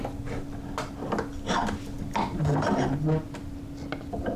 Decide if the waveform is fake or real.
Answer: real